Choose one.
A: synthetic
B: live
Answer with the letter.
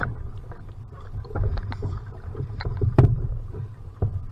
A